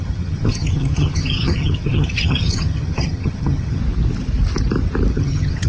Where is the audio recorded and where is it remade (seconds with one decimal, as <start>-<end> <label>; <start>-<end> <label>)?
0.0-3.8 remade; 3.8-5.1 recorded; 5.1-5.7 remade